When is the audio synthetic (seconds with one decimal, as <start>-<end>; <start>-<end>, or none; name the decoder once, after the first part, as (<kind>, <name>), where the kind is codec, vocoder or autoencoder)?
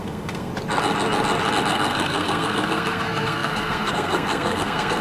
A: 0.0-0.5 (codec, SNAC); 1.7-5.0